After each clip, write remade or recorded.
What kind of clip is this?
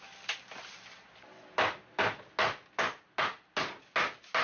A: recorded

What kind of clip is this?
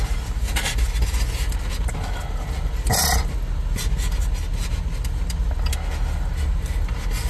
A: recorded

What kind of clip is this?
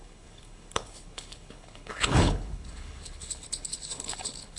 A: remade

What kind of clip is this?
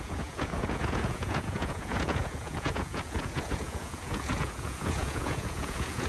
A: remade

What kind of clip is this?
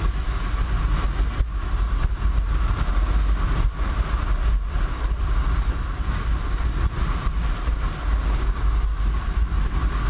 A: recorded